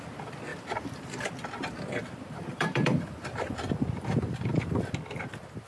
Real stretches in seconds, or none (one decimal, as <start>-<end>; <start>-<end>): 0.0-0.5; 1.3-2.0; 4.9-5.7